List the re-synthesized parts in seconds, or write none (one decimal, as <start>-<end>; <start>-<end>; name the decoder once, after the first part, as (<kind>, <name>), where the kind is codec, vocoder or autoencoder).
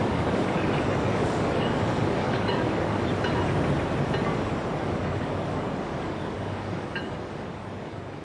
0.0-3.1 (codec, DAC); 4.7-8.2